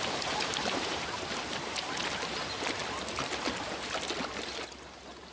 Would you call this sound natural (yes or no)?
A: yes